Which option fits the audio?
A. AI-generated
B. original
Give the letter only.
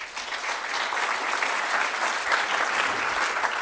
B